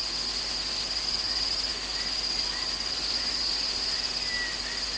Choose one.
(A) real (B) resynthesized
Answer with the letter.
A